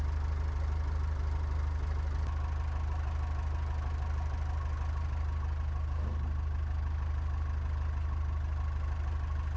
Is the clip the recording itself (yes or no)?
yes